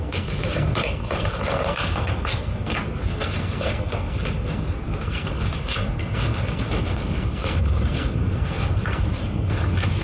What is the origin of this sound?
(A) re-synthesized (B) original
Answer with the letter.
A